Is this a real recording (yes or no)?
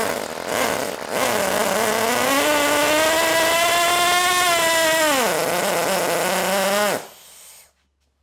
yes